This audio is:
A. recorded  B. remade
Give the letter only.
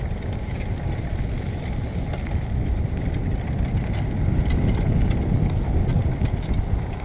A